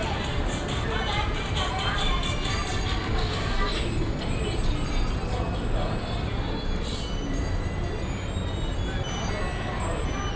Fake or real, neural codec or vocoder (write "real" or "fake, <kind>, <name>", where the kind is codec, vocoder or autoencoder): real